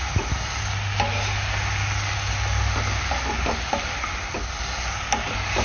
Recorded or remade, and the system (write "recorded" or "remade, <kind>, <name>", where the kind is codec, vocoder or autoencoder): recorded